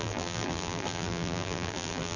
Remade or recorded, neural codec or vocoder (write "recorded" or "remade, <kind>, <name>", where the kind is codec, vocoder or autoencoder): remade, vocoder, BigVGAN v2